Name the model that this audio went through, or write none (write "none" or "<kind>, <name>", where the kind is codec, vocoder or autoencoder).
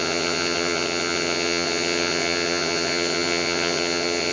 vocoder, HiFi-GAN